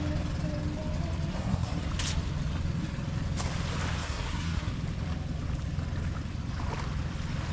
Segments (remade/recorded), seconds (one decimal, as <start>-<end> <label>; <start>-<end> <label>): 0.0-1.3 recorded; 1.3-1.9 remade; 1.9-4.0 recorded; 4.0-4.7 remade; 4.7-7.5 recorded